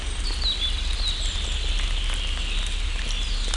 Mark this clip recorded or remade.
recorded